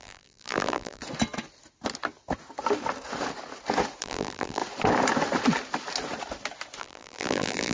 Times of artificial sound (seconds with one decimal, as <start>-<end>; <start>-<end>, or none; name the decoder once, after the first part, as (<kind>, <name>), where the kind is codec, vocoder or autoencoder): 0.0-1.0 (vocoder, BigVGAN v2); 4.0-4.6; 6.8-7.7